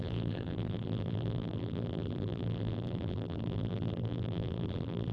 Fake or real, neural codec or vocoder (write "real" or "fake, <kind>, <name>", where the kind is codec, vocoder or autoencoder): fake, vocoder, BigVGAN v2